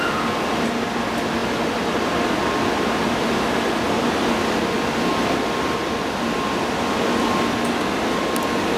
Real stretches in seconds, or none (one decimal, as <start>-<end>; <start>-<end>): 0.0-8.8